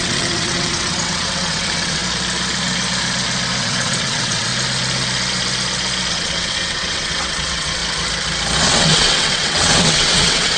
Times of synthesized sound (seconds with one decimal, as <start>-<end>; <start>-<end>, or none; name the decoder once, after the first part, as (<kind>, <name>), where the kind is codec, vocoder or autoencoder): 0.0-2.0 (vocoder, WaveNeXt); 3.6-4.5; 6.1-7.8; 8.6-10.6